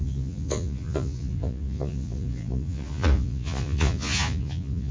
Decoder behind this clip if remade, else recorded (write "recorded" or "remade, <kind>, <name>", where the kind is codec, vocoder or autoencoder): remade, vocoder, Vocos